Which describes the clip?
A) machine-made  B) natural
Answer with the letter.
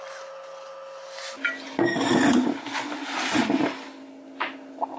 B